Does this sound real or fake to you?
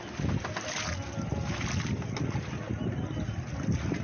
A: real